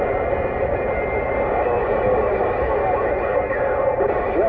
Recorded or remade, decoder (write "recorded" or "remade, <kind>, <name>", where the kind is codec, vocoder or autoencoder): recorded